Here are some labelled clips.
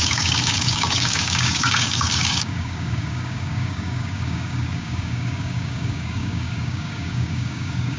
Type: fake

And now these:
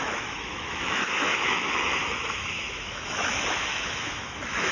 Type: fake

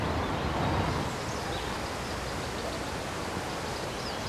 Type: fake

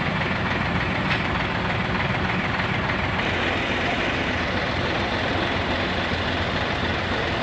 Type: real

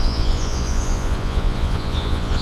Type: fake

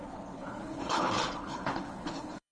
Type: fake